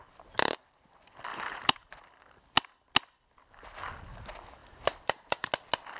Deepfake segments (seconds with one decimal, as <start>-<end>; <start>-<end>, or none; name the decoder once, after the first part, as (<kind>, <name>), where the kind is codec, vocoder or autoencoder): 1.3-1.9 (vocoder, BigVGAN v2); 4.6-5.5